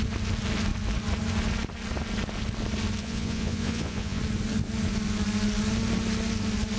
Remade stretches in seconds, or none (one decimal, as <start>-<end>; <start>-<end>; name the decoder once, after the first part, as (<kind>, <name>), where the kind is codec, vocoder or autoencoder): 3.0-4.2 (vocoder, Vocos)